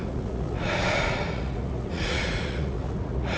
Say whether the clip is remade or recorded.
remade